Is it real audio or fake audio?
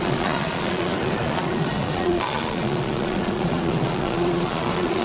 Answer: fake